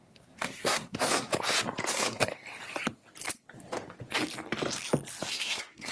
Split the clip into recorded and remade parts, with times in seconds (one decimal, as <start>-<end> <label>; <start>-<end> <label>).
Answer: 0.0-1.3 remade; 1.3-1.9 recorded; 1.9-2.3 remade; 2.3-5.3 recorded; 5.3-5.9 remade